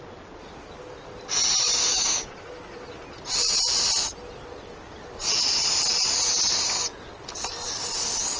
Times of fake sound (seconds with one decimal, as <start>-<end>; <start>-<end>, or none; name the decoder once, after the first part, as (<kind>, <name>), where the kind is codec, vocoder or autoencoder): 1.8-2.3 (codec, DAC)